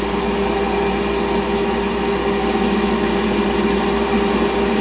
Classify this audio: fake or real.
real